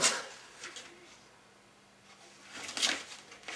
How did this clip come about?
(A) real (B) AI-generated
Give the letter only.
A